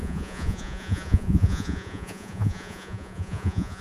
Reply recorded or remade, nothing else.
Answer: remade